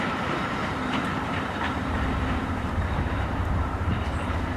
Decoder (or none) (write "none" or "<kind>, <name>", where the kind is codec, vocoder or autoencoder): vocoder, BigVGAN v2